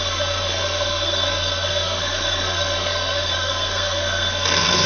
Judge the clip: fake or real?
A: fake